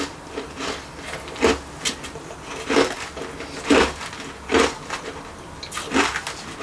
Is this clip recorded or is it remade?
recorded